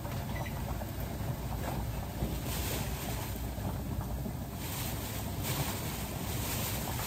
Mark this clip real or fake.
real